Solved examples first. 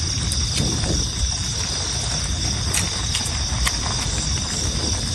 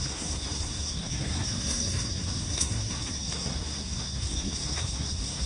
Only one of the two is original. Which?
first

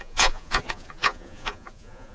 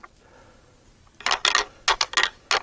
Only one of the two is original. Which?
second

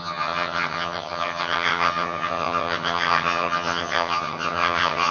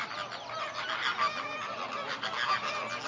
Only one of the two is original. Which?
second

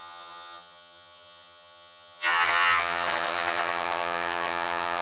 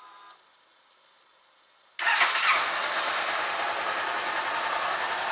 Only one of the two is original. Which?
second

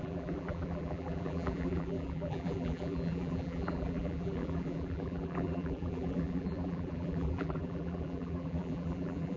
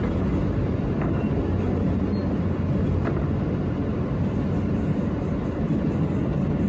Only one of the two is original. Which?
second